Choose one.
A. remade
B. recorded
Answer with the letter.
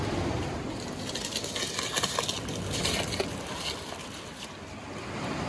B